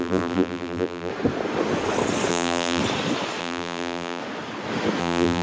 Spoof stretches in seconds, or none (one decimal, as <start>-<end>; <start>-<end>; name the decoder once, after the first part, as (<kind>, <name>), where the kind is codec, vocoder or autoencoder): 0.0-1.1 (vocoder, BigVGAN v2); 2.3-2.8; 3.4-4.2; 5.0-5.4